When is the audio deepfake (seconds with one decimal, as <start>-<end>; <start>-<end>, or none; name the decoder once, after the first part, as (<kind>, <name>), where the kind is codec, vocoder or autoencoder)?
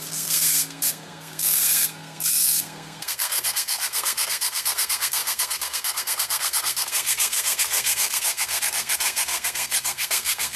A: 0.0-10.6 (codec, SNAC)